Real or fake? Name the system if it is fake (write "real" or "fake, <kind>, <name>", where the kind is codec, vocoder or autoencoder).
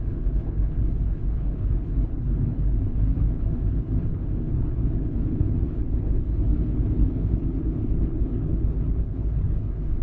fake, codec, HILCodec